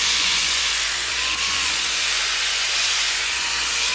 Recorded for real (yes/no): no